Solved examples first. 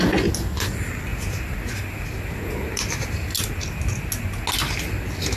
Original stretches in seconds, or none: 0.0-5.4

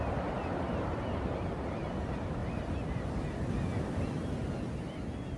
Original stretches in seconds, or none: 0.0-2.4; 3.2-5.4